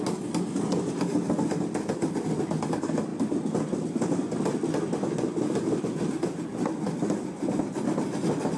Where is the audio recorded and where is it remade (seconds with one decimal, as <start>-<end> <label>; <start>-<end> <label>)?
0.0-8.6 recorded